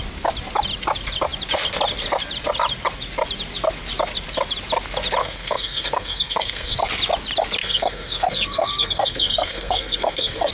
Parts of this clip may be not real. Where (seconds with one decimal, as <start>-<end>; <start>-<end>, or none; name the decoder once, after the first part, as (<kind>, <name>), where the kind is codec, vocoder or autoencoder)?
5.2-6.9 (codec, SNAC); 7.6-10.5